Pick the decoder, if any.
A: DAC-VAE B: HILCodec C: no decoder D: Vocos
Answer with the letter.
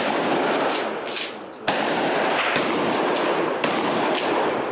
C